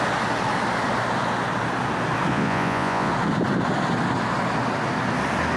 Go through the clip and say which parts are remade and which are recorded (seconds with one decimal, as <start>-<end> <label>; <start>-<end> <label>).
0.0-2.3 recorded; 2.3-3.1 remade; 3.1-5.6 recorded